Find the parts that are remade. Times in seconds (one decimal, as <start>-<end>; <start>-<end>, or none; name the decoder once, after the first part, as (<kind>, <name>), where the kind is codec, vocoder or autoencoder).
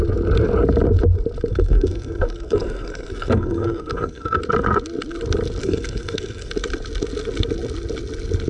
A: 1.5-4.4 (codec, SNAC); 5.6-6.5